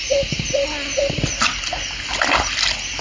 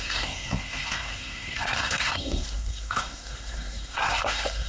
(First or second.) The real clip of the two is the first